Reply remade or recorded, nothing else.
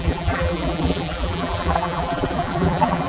remade